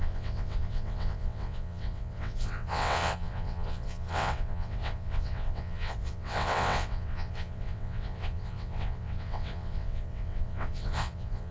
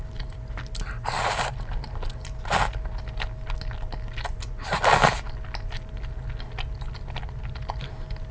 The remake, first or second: first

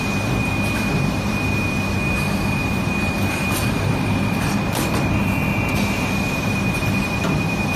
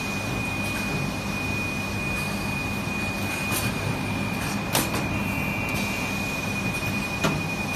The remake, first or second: first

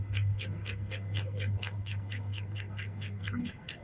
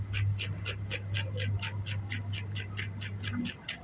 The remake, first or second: first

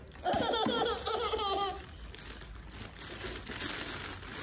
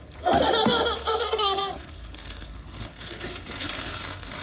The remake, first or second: second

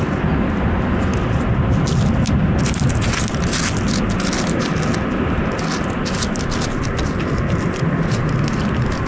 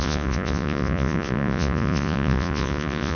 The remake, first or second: second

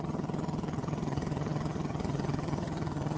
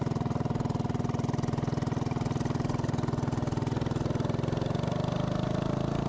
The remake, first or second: first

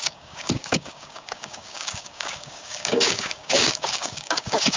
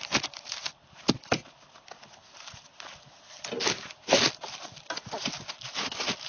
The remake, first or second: first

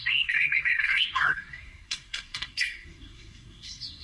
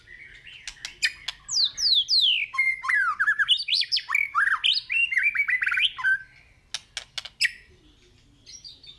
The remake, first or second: first